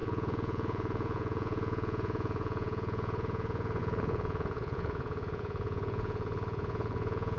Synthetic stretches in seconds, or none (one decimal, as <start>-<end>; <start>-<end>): 0.0-7.4